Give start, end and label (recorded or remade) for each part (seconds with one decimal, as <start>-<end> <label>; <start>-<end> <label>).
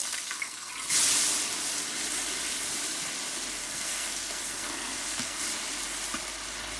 0.0-0.7 remade; 0.7-3.6 recorded; 3.6-5.4 remade; 5.4-6.8 recorded